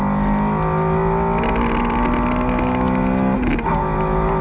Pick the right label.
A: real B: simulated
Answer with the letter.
A